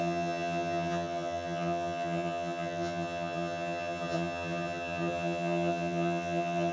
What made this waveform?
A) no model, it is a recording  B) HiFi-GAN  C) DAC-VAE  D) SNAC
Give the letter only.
B